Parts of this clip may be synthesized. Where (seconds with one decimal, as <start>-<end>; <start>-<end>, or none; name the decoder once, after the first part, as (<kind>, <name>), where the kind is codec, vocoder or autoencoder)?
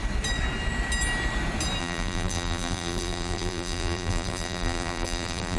1.8-5.6 (vocoder, BigVGAN v2)